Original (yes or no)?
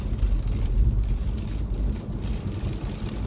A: yes